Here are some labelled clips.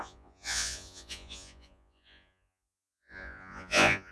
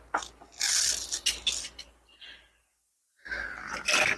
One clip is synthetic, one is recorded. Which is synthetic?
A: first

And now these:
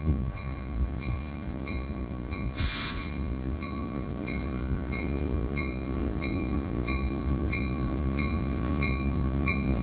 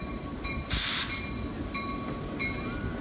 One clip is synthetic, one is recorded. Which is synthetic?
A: first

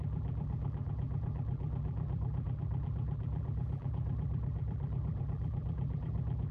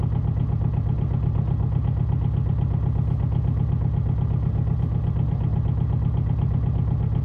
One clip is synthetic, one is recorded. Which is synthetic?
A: first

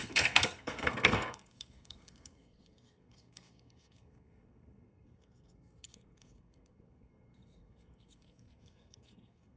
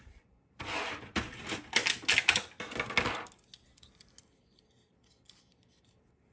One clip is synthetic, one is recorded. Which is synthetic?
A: first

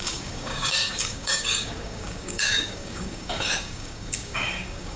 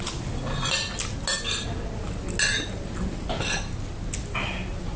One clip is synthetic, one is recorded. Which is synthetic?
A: first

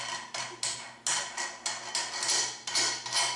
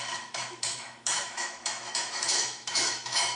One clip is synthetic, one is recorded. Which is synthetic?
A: second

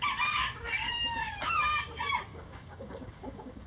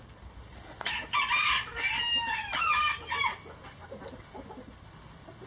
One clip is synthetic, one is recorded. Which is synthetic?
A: first